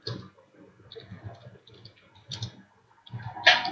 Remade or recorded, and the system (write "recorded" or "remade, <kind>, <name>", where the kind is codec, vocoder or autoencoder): recorded